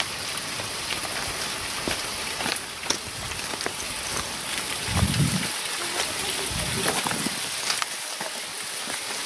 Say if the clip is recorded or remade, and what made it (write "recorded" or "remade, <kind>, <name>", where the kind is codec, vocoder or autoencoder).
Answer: recorded